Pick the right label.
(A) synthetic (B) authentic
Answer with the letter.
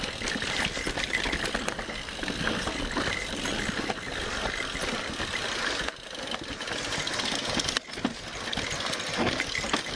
B